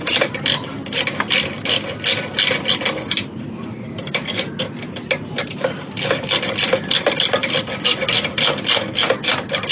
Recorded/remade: recorded